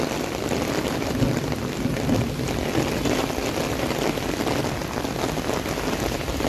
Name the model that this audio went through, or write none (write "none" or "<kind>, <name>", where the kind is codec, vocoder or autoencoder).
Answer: none